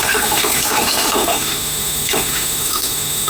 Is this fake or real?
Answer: fake